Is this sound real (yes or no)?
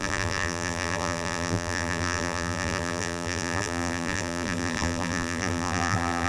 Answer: no